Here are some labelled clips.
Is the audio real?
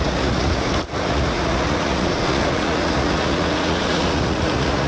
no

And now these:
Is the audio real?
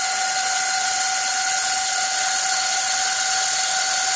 yes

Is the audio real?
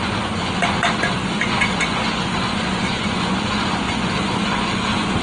no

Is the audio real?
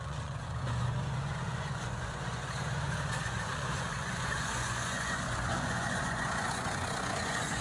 no